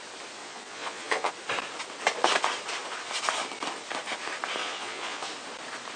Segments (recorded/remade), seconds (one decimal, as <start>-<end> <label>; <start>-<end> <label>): 0.0-0.4 recorded; 0.4-1.3 remade; 1.3-4.6 recorded; 4.6-5.3 remade; 5.3-6.0 recorded